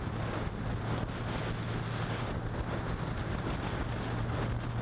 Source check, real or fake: real